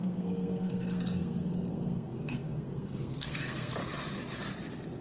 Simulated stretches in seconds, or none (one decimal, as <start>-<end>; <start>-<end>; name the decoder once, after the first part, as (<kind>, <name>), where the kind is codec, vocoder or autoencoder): 0.0-3.8 (codec, SNAC)